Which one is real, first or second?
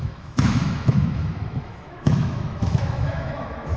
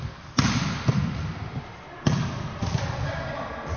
second